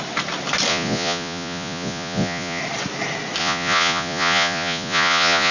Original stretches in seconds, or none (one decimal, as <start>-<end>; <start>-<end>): 0.0-0.7; 2.6-3.4